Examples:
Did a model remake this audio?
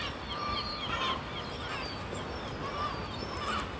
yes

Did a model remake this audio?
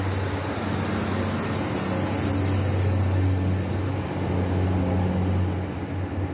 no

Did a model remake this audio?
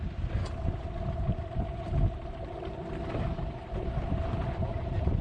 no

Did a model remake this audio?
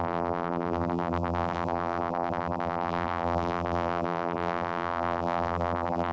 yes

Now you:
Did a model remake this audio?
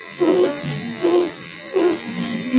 yes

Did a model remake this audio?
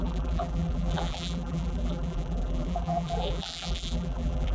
yes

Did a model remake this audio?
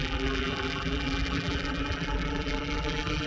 yes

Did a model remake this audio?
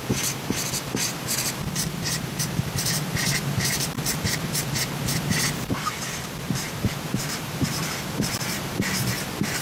yes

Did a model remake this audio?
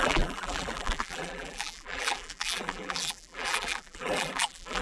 yes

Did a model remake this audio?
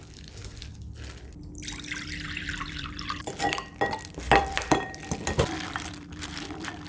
yes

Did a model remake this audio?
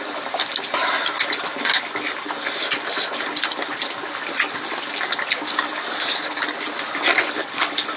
no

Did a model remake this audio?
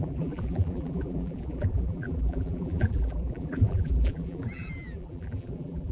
yes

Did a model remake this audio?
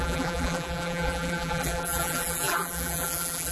yes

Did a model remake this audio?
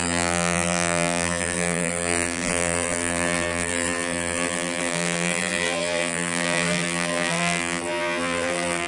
yes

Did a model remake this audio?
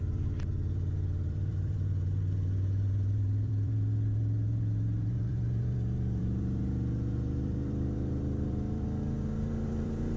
yes